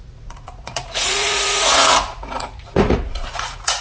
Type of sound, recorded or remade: remade